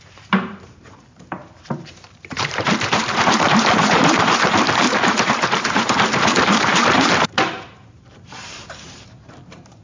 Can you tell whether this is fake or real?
fake